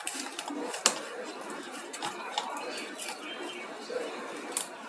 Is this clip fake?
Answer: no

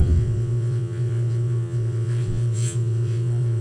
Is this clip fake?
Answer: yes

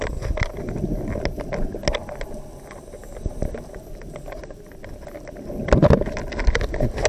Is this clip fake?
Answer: no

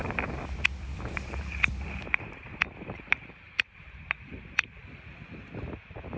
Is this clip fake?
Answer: yes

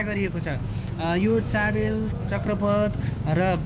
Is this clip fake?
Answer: yes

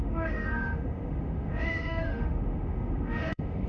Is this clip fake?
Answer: yes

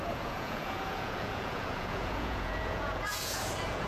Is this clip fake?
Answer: yes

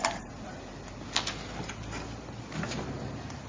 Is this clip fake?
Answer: no